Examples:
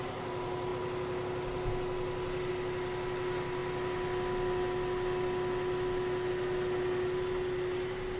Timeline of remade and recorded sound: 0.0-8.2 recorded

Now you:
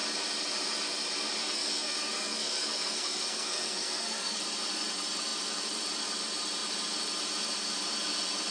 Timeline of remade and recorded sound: 0.0-1.4 recorded; 1.4-4.4 remade; 4.4-8.5 recorded

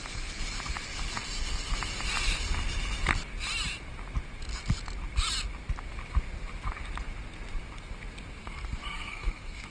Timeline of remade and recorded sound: 0.0-8.4 recorded; 8.4-9.7 remade

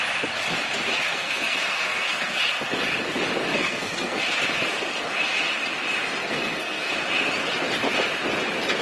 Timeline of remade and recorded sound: 0.0-1.1 recorded; 1.1-2.4 remade; 2.4-3.5 recorded; 3.5-4.2 remade; 4.2-6.2 recorded; 6.2-6.9 remade; 6.9-8.8 recorded

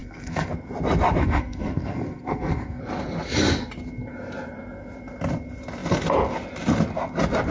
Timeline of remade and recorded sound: 0.0-0.5 remade; 0.5-1.2 recorded; 1.2-2.8 remade; 2.8-7.5 recorded

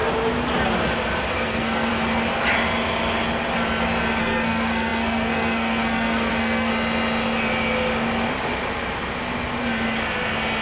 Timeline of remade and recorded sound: 0.0-1.3 recorded; 1.3-1.9 remade; 1.9-4.2 recorded; 4.2-6.7 remade; 6.7-10.6 recorded